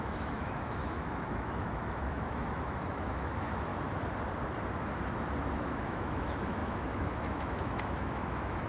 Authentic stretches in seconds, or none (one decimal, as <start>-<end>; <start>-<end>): 3.7-5.5